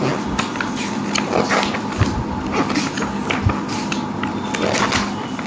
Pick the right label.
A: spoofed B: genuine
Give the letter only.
B